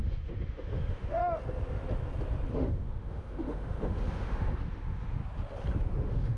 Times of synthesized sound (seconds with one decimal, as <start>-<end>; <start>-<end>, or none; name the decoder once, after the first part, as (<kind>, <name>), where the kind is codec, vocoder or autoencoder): 0.0-1.2 (autoencoder, DAC-VAE); 2.5-5.2; 5.8-6.4